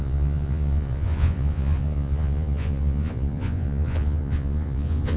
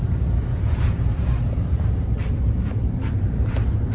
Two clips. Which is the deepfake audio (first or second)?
first